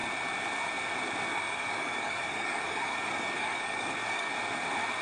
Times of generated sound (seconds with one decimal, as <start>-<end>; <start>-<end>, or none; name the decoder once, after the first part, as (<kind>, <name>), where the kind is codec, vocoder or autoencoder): 1.3-4.3 (codec, DAC)

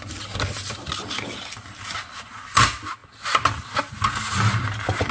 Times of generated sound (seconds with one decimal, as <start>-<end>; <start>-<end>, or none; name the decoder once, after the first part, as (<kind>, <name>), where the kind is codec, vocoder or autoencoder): none

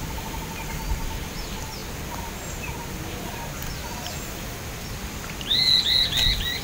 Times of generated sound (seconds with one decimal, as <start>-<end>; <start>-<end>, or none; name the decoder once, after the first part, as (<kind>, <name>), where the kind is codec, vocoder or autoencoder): none

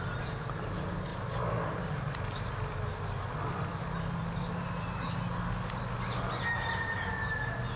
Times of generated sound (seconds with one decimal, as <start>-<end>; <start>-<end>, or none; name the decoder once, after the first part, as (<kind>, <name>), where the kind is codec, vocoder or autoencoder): none

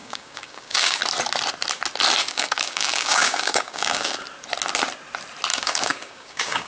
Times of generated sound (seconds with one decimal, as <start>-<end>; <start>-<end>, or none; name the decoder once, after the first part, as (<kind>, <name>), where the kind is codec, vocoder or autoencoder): 0.0-1.0 (codec, DAC); 2.2-4.2; 5.5-6.7

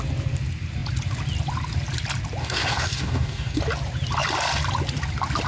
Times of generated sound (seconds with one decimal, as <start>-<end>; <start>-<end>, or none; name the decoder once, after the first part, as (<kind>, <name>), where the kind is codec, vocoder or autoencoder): 2.4-3.6 (codec, DAC)

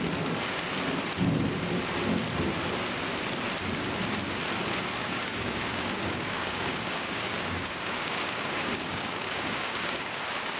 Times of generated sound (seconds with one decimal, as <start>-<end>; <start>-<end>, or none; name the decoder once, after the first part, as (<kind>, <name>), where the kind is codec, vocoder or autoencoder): 5.0-10.2 (codec, DAC)